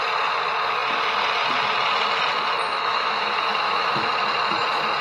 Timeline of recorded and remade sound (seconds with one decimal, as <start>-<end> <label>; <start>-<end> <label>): 0.0-2.7 recorded; 2.7-4.1 remade; 4.1-5.0 recorded